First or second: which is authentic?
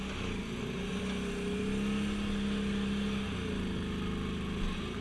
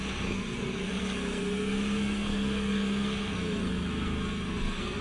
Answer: first